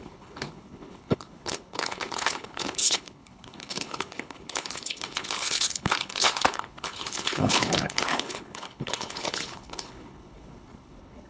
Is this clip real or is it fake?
fake